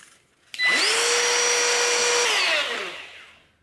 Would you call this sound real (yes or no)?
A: yes